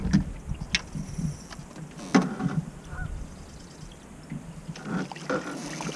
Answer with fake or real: real